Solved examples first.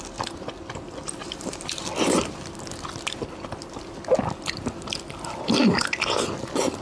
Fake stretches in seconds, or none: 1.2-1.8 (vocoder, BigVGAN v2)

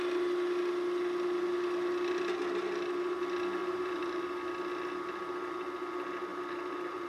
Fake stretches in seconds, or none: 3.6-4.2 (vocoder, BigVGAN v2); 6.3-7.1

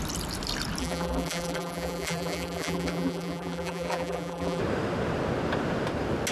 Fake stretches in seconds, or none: 0.8-4.6 (vocoder, BigVGAN v2)